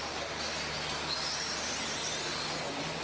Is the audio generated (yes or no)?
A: no